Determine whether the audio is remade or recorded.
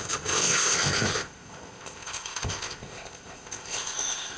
remade